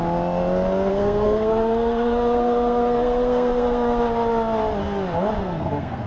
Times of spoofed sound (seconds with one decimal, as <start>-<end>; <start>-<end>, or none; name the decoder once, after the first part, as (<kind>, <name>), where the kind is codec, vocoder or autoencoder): 0.9-4.0 (codec, SNAC); 5.4-6.1